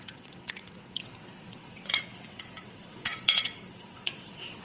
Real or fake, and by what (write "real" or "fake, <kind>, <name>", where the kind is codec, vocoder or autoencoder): fake, vocoder, WaveNeXt